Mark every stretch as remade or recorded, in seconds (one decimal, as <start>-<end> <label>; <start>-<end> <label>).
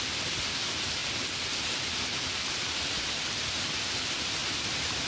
0.0-5.1 recorded